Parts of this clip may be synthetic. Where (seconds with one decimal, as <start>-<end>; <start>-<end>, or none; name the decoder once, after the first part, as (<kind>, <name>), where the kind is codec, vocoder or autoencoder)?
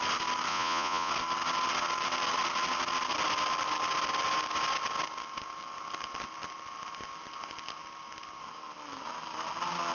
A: 0.5-1.1 (vocoder, Vocos)